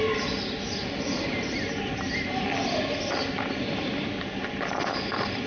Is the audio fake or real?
real